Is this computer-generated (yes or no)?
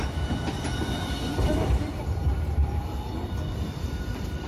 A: yes